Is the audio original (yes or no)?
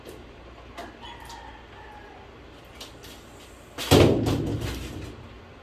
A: yes